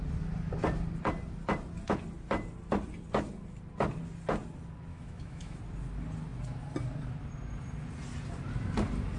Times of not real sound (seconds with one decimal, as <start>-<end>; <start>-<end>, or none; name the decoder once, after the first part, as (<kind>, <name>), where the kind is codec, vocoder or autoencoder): 4.9-5.6 (autoencoder, DAC-VAE)